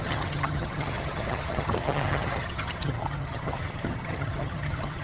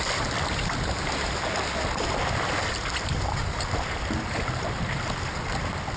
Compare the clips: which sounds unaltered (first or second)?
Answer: second